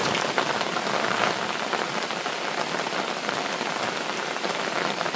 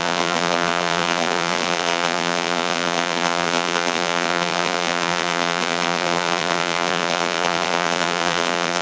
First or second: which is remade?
second